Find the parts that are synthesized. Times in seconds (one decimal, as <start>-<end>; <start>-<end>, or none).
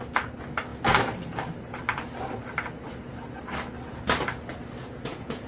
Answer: 4.8-5.5